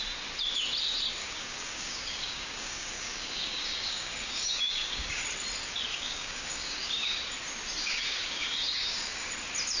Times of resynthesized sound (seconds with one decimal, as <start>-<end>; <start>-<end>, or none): 1.2-5.2; 5.9-7.2; 7.8-9.3